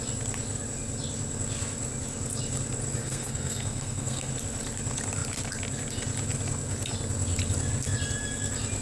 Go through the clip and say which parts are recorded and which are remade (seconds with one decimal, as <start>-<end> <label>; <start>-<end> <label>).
0.0-3.0 recorded; 3.0-4.3 remade; 4.3-8.8 recorded